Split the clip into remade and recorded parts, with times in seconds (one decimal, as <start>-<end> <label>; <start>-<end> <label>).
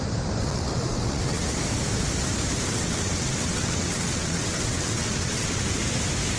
0.0-0.4 recorded; 0.4-1.6 remade; 1.6-2.7 recorded; 2.7-5.6 remade; 5.6-6.4 recorded